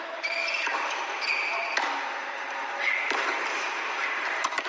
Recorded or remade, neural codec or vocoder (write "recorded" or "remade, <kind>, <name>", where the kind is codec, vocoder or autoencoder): recorded